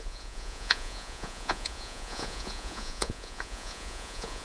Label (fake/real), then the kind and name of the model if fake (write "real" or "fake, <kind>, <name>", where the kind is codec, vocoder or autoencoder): fake, vocoder, Vocos